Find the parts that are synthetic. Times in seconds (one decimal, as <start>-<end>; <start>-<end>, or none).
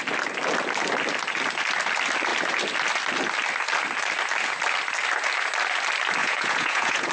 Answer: 6.2-7.1